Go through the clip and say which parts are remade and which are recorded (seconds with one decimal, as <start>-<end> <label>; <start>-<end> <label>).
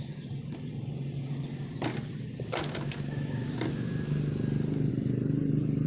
0.0-5.9 recorded